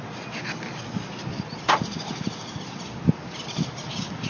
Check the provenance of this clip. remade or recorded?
recorded